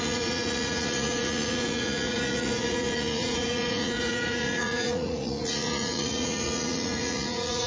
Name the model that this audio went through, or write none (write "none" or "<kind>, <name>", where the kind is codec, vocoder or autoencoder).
vocoder, Vocos